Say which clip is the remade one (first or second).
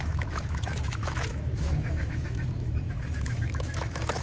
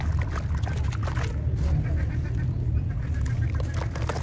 first